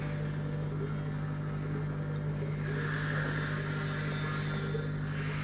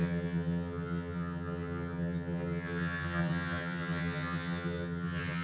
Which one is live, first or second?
first